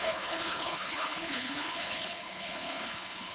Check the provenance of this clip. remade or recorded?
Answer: remade